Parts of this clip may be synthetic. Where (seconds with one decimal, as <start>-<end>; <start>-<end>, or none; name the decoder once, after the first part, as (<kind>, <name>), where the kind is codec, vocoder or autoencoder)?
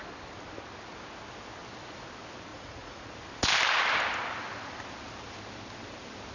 2.5-3.1 (vocoder, Vocos)